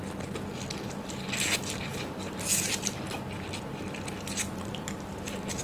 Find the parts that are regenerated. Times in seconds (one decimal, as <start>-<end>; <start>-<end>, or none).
none